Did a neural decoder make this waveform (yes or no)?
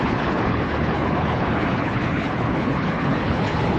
yes